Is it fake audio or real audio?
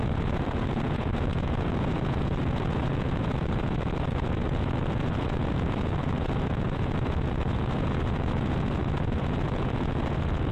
fake